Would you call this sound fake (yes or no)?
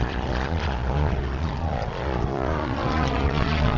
yes